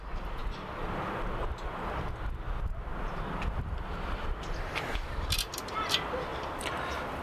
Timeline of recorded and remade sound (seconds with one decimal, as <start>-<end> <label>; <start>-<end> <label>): 0.0-2.9 remade; 2.9-3.6 recorded; 3.6-7.2 remade